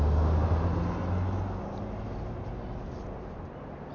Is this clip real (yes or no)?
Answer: yes